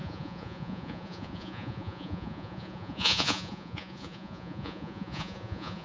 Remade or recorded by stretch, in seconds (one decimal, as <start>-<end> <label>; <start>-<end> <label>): 0.0-5.8 remade